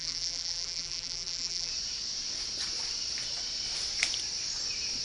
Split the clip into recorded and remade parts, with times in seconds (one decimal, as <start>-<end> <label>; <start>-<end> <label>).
0.0-1.7 remade; 1.7-5.0 recorded